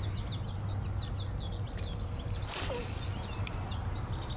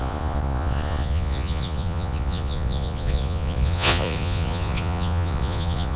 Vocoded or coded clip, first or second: second